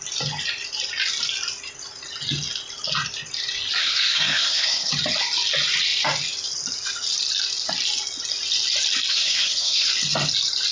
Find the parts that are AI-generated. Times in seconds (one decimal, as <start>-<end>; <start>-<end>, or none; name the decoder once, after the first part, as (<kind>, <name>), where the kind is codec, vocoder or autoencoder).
3.8-4.9 (codec, SNAC); 9.1-9.9